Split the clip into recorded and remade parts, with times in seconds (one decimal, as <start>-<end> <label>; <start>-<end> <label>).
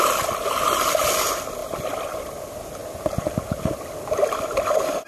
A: 0.0-1.6 recorded; 1.6-2.2 remade; 2.2-5.1 recorded